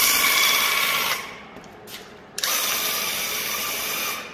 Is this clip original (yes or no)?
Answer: no